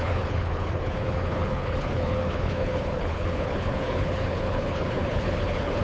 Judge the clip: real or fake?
fake